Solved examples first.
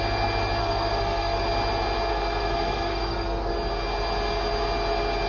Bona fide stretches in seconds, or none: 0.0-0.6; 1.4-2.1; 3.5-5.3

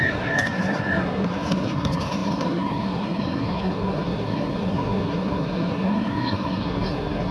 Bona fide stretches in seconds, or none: none

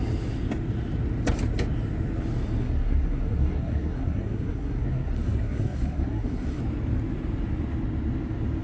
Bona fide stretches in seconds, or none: 0.0-2.6; 6.6-8.6

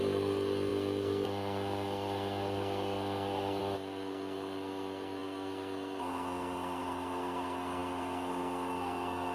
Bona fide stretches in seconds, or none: none